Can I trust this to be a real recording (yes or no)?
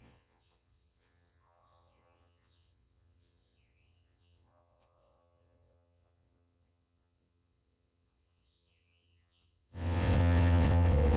no